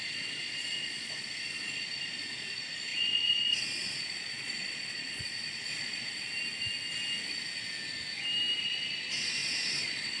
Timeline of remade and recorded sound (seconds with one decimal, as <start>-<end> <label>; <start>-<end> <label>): 0.0-6.1 remade; 6.1-8.6 recorded; 8.6-10.2 remade